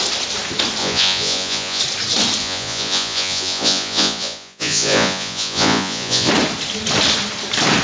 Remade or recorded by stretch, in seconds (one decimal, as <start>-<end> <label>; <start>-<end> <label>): 0.0-0.8 recorded; 0.8-1.8 remade; 1.8-2.4 recorded; 2.4-6.3 remade; 6.3-7.8 recorded